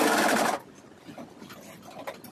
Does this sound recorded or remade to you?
recorded